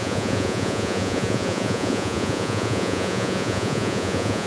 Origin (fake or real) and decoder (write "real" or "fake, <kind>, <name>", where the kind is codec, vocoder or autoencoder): fake, vocoder, Vocos